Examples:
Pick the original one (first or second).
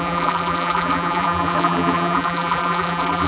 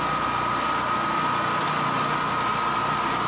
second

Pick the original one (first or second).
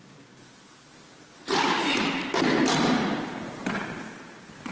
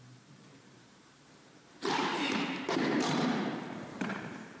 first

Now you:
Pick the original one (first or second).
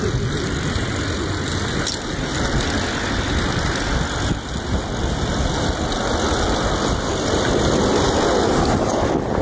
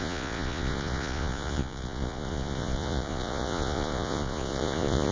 first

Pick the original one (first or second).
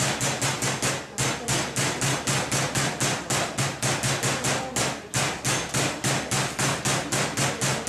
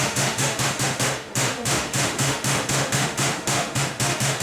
first